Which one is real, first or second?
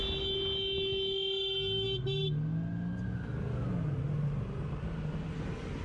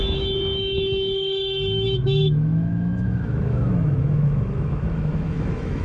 first